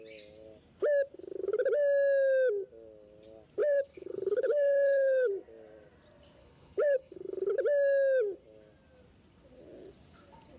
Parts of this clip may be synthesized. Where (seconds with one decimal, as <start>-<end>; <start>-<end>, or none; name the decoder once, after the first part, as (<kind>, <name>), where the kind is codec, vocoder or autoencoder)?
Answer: 3.6-5.3 (codec, HILCodec); 6.4-7.5